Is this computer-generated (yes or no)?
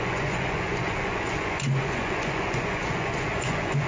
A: yes